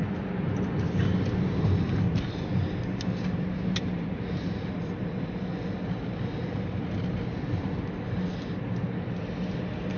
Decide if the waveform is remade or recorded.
recorded